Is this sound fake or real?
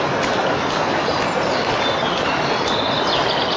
real